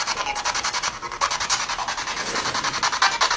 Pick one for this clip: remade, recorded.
recorded